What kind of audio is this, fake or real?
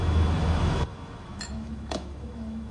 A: fake